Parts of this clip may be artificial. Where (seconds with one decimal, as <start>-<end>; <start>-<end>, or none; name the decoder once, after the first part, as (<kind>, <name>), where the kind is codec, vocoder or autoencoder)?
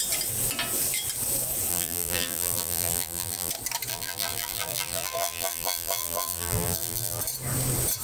1.7-3.5 (vocoder, BigVGAN v2); 3.9-7.2